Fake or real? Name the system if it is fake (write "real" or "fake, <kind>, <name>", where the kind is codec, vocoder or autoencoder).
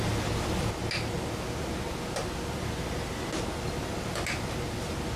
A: real